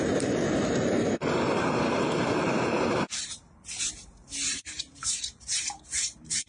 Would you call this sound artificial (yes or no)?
yes